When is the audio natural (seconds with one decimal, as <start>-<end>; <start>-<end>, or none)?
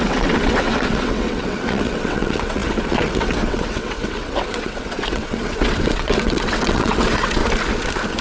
7.4-8.2